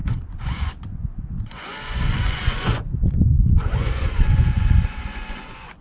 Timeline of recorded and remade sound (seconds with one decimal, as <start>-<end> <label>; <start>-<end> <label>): 0.0-5.8 remade

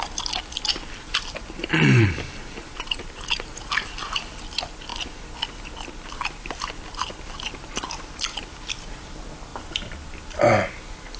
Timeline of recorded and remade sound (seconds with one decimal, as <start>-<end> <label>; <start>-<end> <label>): 0.0-1.6 recorded; 1.6-3.8 remade; 3.8-11.2 recorded